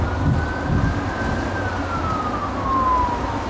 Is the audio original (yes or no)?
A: yes